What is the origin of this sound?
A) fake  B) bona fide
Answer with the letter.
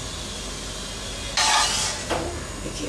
B